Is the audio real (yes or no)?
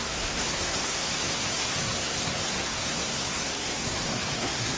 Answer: no